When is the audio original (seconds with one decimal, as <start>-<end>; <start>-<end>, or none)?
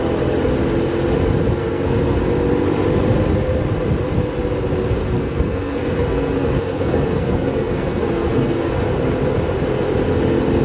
0.0-1.6; 2.2-5.0; 8.7-10.6